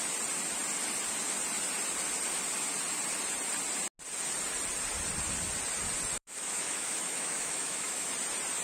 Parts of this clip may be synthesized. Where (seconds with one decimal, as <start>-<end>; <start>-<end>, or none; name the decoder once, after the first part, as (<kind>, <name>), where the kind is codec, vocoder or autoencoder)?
6.2-8.1 (autoencoder, DAC-VAE)